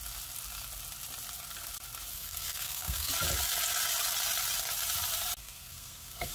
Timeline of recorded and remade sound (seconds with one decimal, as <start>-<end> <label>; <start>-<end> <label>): 0.0-2.1 recorded; 2.1-3.1 remade; 3.1-5.4 recorded; 5.4-6.3 remade